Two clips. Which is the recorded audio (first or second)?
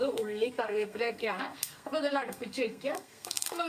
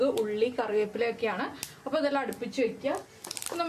second